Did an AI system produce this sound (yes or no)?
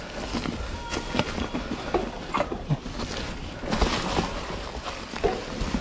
no